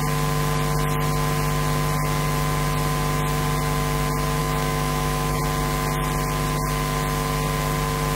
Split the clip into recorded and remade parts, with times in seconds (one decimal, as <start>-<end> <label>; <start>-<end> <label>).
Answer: 0.0-4.4 recorded; 4.4-5.4 remade; 5.4-8.1 recorded